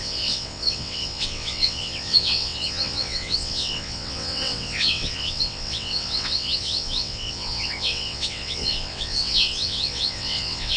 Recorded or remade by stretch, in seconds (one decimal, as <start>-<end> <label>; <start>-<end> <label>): 0.0-10.8 remade